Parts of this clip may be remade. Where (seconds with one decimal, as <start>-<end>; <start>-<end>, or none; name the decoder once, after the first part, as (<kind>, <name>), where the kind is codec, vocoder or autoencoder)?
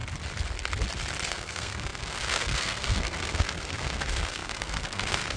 1.3-5.4 (codec, SNAC)